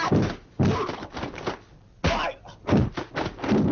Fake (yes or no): no